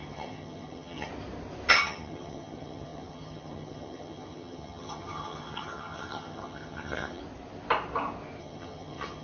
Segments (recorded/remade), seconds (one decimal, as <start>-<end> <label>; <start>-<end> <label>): 0.0-1.1 remade; 1.1-1.7 recorded; 1.7-7.2 remade; 7.2-8.4 recorded; 8.4-9.2 remade